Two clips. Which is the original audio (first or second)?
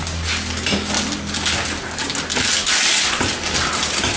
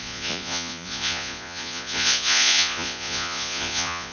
first